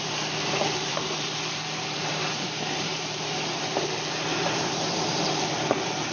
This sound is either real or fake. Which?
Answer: fake